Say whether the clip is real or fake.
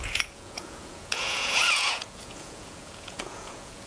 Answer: fake